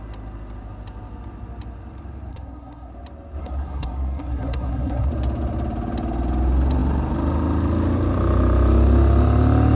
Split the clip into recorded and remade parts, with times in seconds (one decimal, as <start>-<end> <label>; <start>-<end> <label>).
0.0-2.3 recorded; 2.3-2.9 remade; 2.9-3.4 recorded; 3.4-5.1 remade; 5.1-9.8 recorded